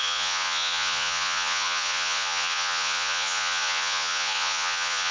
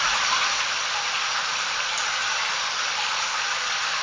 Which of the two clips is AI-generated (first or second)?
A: first